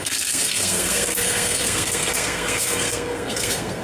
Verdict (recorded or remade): remade